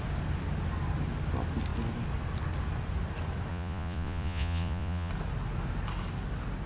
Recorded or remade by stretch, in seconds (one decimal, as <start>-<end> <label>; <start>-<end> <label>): 0.0-3.5 recorded; 3.5-5.1 remade; 5.1-6.7 recorded